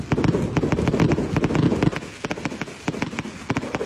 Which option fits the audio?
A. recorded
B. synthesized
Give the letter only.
A